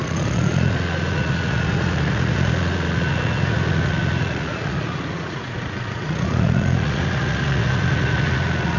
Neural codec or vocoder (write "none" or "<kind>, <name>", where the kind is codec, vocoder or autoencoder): vocoder, Vocos